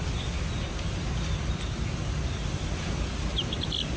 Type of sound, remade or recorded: recorded